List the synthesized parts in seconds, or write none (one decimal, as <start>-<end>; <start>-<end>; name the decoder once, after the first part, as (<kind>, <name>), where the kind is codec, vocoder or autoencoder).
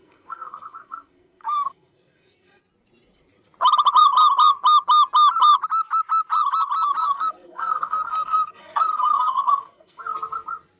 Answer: 0.0-2.6 (codec, SNAC); 7.0-10.0